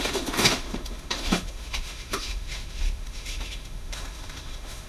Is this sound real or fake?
fake